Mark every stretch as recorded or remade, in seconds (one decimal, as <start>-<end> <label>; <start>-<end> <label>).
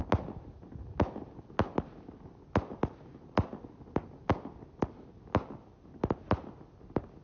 0.0-7.2 recorded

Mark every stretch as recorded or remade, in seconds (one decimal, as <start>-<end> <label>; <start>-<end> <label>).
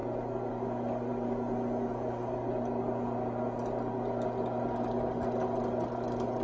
0.0-6.4 recorded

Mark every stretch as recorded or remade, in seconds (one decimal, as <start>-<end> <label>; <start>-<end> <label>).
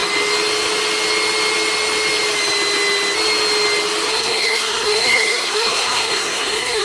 0.0-4.1 recorded; 4.1-6.8 remade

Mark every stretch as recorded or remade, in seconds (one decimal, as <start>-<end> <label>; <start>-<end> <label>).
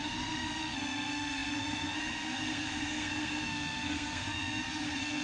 0.0-5.2 remade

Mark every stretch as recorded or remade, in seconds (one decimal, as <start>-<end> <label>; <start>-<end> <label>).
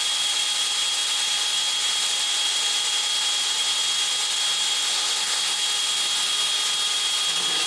0.0-4.9 recorded; 4.9-5.6 remade; 5.6-7.7 recorded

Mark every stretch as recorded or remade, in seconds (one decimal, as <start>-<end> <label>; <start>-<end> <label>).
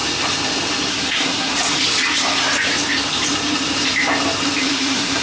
0.0-0.9 recorded; 0.9-1.5 remade; 1.5-4.6 recorded; 4.6-5.2 remade